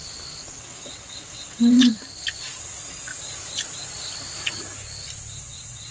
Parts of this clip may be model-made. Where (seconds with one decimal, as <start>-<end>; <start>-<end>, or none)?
0.6-1.9; 2.6-3.1; 5.4-5.9